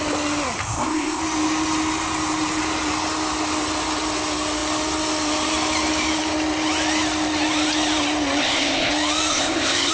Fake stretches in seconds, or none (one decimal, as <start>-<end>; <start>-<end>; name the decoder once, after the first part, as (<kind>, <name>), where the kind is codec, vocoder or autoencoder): 0.6-1.2 (codec, ZipCodec); 8.4-8.9; 9.3-9.9